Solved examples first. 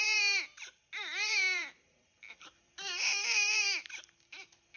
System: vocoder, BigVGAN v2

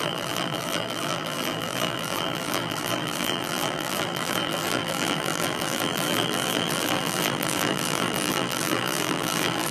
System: vocoder, BigVGAN v2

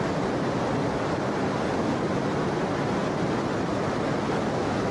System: none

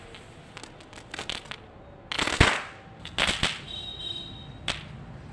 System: none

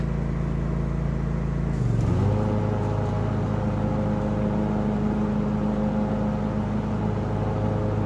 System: none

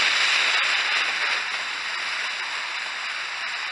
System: none